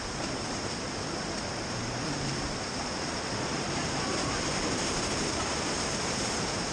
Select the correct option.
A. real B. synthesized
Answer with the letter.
B